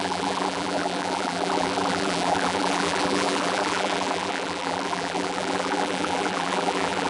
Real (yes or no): no